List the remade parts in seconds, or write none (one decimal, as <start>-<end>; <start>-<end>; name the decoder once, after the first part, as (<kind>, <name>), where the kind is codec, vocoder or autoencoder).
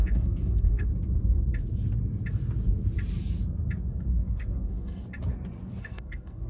0.0-0.9 (codec, SNAC); 3.9-5.0; 5.8-6.5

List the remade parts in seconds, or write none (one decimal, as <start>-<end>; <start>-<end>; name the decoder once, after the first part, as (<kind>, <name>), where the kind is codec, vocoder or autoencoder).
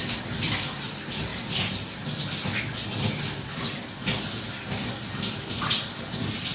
none